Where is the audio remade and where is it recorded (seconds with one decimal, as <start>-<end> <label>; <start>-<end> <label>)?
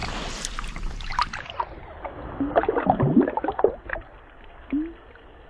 0.0-5.5 recorded